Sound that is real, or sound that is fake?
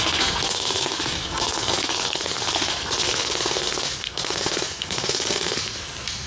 fake